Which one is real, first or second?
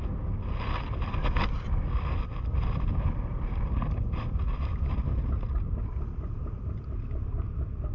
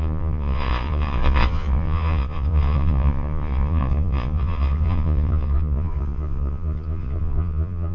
first